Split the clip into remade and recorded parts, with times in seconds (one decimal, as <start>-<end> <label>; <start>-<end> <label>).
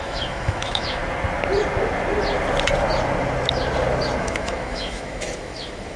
0.0-1.0 remade; 1.0-4.2 recorded; 4.2-6.0 remade